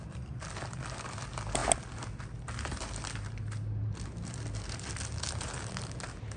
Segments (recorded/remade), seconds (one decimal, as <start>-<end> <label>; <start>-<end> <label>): 0.0-6.4 recorded